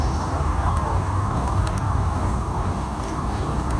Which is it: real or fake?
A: fake